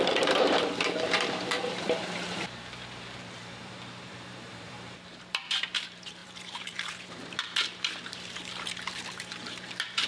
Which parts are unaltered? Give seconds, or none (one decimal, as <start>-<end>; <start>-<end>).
none